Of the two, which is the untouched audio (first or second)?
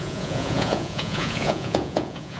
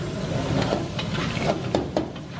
second